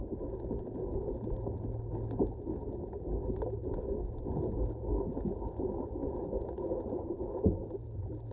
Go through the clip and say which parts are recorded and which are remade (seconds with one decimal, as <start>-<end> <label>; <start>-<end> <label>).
0.0-6.0 recorded; 6.0-7.8 remade; 7.8-8.3 recorded